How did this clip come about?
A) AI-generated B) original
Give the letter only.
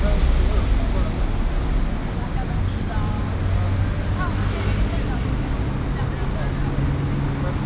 B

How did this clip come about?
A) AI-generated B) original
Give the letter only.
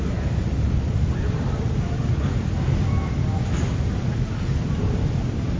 B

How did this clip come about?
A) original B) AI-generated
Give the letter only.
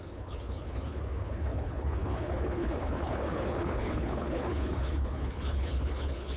B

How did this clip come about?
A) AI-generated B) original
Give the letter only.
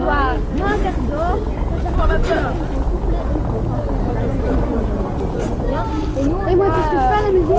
B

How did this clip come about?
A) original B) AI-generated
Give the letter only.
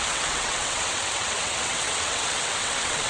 B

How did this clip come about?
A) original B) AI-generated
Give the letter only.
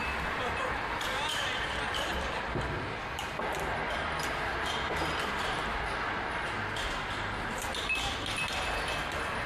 A